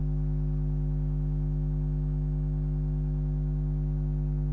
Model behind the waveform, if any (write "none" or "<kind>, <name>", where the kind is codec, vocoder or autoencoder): none